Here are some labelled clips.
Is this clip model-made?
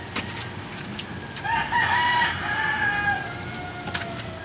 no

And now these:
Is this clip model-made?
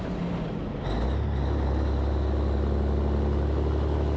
no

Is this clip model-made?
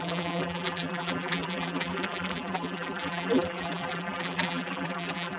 yes